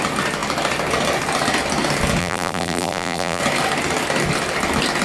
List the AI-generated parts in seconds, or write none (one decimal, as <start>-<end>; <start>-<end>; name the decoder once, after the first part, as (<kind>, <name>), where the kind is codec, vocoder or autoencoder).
2.2-3.4 (vocoder, BigVGAN v2)